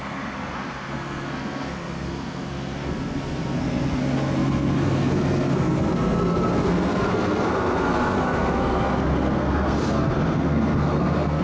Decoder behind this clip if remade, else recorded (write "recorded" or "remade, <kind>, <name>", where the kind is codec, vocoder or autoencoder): remade, codec, SNAC